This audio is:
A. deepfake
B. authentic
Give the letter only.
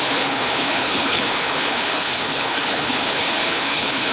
A